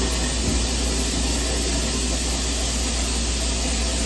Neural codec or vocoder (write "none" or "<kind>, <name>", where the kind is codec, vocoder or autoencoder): none